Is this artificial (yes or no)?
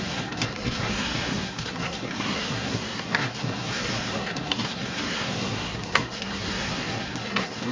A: yes